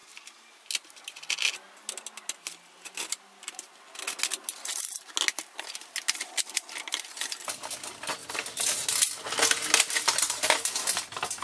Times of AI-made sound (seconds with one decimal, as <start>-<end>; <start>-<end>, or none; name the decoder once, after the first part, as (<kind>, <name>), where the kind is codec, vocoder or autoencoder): none